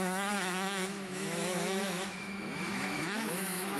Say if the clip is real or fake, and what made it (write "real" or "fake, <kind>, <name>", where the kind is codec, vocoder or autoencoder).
fake, autoencoder, DAC-VAE